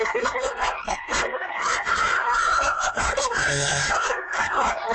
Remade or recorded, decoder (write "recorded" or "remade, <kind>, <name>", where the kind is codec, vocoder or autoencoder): remade, codec, SNAC